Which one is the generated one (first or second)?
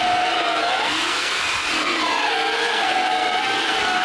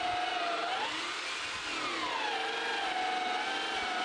first